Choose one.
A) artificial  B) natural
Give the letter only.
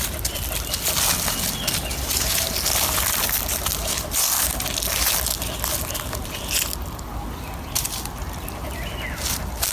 B